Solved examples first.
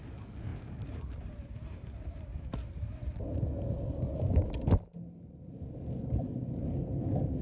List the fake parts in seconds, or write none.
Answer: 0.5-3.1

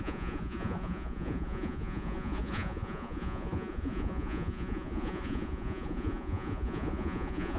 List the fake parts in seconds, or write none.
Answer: 0.0-7.6

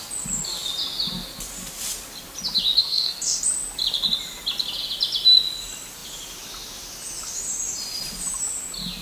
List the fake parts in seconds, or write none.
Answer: 2.8-3.4

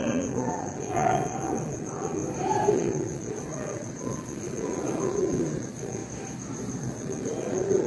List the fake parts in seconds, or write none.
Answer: 0.0-2.2; 2.7-6.0; 6.8-7.9

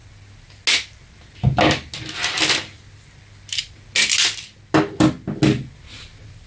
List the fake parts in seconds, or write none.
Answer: none

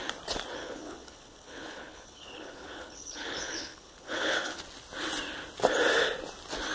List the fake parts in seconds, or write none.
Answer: 0.6-4.6

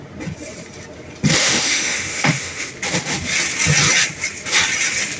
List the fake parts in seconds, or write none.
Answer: 1.4-2.7

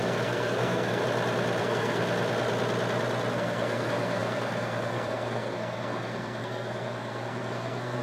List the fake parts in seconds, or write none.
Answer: 0.0-1.0; 1.6-2.0; 3.3-8.0